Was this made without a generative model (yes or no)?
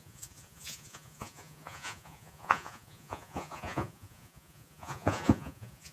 no